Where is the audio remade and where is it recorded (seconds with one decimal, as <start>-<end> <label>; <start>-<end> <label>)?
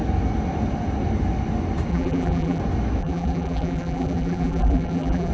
0.0-1.9 recorded; 1.9-2.6 remade; 2.6-3.0 recorded; 3.0-5.3 remade